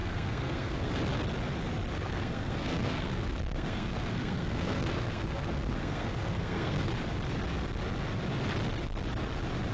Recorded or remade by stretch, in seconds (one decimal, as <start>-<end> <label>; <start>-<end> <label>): 0.0-0.9 remade; 0.9-1.9 recorded; 1.9-6.9 remade; 6.9-9.7 recorded